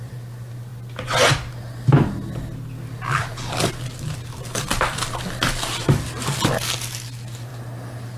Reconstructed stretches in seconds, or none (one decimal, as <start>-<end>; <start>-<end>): none